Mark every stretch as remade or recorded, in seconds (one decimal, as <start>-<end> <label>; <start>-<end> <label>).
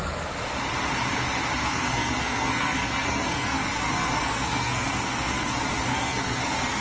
0.0-1.6 recorded; 1.6-5.5 remade; 5.5-5.9 recorded; 5.9-6.8 remade